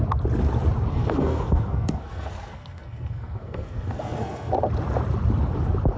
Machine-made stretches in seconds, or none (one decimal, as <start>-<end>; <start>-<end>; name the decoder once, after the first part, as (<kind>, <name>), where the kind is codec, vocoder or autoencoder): 0.9-4.5 (codec, SNAC)